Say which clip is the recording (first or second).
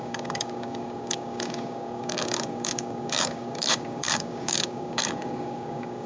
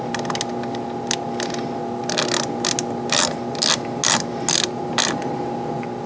second